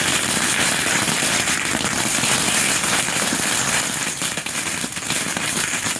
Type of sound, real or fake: fake